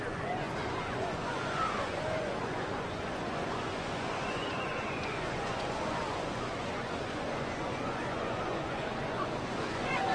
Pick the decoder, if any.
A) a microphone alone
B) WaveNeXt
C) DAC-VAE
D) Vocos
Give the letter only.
D